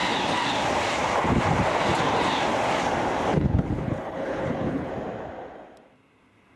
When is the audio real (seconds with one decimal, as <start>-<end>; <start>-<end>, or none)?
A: 0.0-3.3; 4.9-6.6